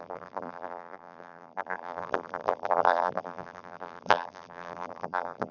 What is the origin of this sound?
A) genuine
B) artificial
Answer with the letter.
B